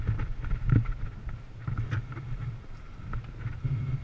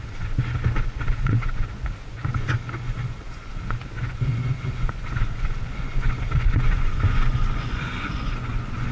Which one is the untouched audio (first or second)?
first